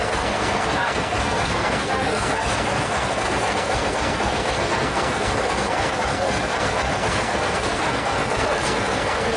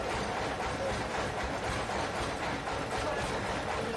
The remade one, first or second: first